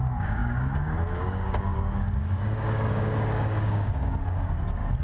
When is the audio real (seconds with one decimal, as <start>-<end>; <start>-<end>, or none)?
none